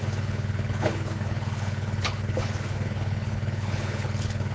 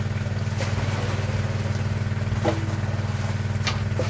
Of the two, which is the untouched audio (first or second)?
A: second